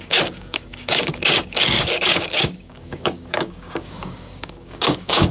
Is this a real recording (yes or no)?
no